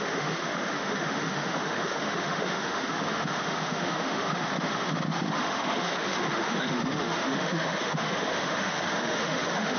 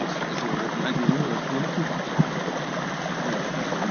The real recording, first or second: second